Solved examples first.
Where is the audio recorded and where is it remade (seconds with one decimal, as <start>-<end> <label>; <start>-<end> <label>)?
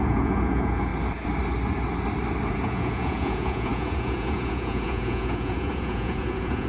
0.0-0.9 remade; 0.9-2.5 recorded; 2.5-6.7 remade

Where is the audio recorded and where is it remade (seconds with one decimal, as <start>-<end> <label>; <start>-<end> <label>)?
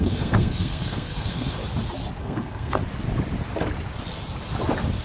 0.0-1.6 remade; 1.6-2.2 recorded; 2.2-2.8 remade; 2.8-5.0 recorded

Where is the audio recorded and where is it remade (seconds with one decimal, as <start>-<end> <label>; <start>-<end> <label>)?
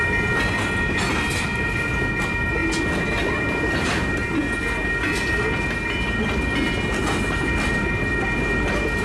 0.0-9.0 recorded